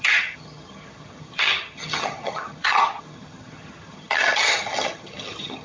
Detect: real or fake fake